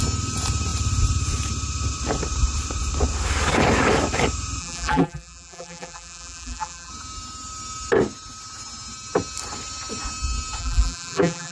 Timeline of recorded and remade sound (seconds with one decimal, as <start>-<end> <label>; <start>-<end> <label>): 0.0-4.6 recorded; 4.6-6.9 remade; 6.9-10.6 recorded; 10.6-11.5 remade